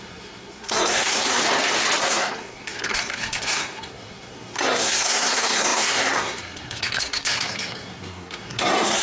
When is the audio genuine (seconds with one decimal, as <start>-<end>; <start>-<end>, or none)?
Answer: 1.4-2.0